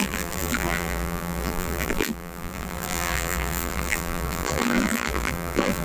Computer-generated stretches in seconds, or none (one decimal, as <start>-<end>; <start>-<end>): 0.0-5.8